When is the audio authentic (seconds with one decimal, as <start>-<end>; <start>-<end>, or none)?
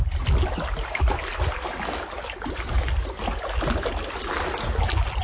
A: 0.0-5.2